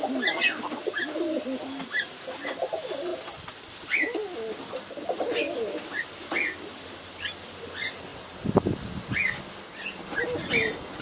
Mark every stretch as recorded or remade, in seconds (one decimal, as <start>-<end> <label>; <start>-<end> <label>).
0.0-11.0 recorded